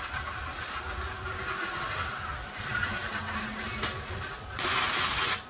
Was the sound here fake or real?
real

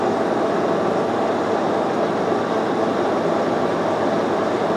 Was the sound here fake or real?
real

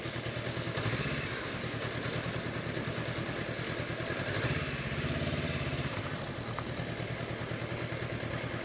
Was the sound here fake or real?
real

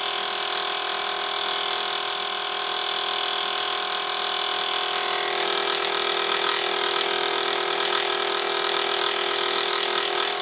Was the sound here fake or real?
real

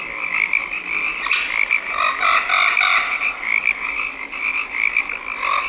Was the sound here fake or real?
real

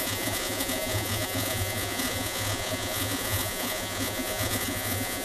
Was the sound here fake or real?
fake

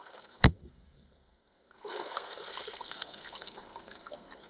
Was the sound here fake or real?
fake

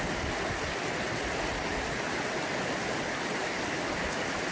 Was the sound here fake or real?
real